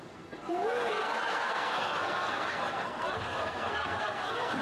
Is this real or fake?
fake